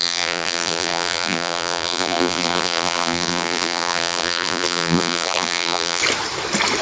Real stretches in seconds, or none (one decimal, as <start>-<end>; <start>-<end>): 6.0-6.8